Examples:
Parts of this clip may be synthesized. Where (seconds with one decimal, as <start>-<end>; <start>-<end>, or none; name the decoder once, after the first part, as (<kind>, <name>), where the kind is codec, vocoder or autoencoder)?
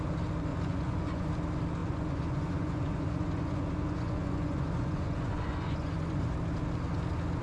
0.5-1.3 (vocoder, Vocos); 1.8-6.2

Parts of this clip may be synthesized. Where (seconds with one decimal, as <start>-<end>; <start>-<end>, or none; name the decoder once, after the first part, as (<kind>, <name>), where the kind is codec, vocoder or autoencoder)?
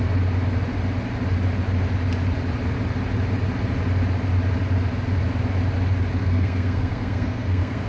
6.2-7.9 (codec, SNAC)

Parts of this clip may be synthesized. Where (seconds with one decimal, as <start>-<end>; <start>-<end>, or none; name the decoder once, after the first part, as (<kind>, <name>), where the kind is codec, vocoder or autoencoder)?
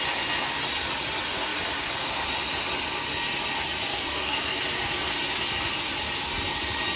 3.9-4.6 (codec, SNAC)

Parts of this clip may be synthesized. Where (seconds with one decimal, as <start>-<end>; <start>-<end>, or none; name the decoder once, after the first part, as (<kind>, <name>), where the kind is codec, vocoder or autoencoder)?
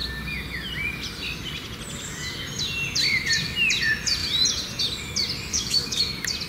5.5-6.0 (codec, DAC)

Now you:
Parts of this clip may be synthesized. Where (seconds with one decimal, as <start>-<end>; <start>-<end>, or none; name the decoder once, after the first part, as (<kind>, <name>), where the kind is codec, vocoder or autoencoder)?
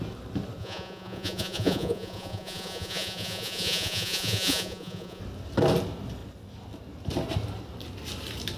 0.6-5.2 (vocoder, Vocos)